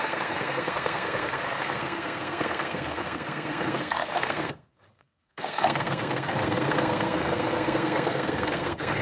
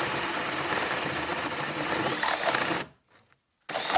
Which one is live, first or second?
second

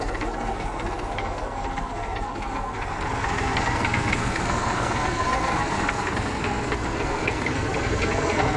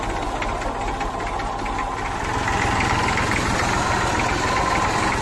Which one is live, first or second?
second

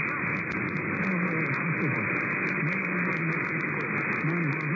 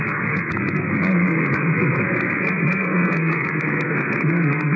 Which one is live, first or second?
first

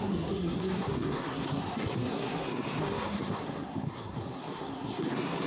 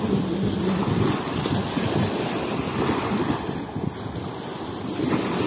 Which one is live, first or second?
second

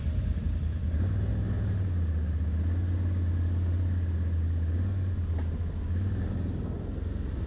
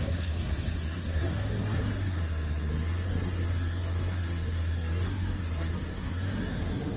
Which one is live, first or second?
first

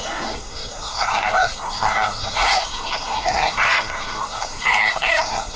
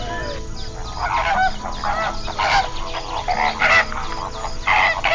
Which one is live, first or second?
second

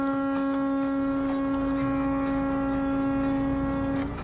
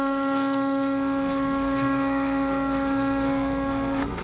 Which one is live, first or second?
first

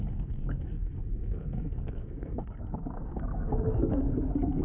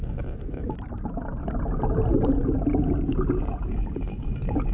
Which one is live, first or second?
second